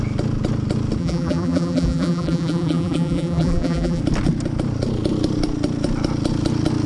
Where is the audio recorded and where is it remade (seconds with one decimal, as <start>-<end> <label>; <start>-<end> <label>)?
0.0-1.0 recorded; 1.0-4.0 remade; 4.0-6.9 recorded